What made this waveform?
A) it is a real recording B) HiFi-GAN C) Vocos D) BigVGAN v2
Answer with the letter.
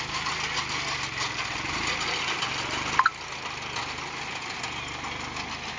A